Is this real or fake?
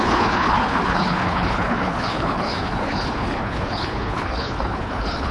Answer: fake